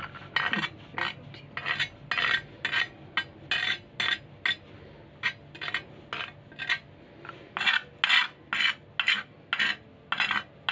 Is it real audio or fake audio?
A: real